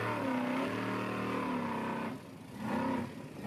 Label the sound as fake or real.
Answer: real